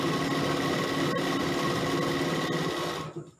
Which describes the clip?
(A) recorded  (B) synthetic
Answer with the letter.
A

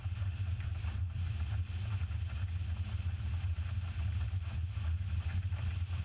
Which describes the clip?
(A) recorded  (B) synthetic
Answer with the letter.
B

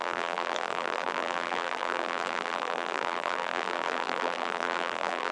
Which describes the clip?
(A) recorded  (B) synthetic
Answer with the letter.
B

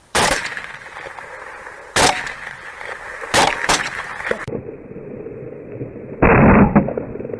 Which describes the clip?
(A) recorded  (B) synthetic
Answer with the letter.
B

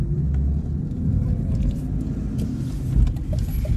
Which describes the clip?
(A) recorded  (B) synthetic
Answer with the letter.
A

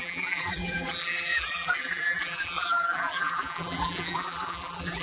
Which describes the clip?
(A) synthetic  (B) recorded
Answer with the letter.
A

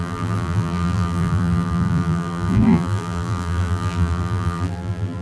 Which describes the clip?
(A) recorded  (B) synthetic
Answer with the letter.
B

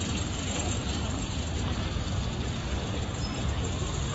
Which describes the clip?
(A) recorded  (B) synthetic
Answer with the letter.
B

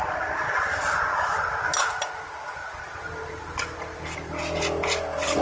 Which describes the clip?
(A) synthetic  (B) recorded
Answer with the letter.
B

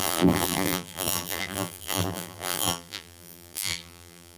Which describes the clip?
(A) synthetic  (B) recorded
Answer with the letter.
A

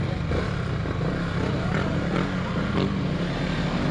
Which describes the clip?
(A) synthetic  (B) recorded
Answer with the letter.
B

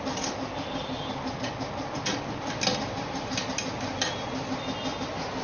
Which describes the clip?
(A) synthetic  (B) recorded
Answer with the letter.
B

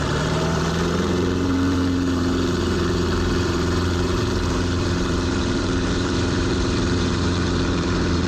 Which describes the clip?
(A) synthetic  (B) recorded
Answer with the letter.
A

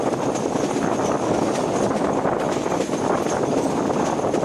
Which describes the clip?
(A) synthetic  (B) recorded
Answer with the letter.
B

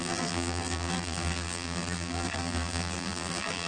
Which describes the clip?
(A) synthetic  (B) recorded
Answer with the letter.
A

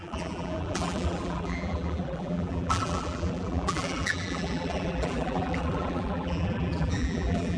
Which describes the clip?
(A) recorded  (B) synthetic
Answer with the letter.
B